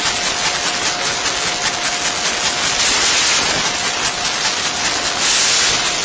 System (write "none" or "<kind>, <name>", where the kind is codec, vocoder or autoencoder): none